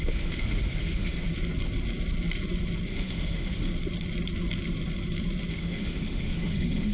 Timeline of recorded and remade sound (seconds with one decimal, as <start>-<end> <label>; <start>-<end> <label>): 0.0-1.3 remade; 1.3-2.9 recorded; 2.9-3.7 remade; 3.7-5.5 recorded; 5.5-6.9 remade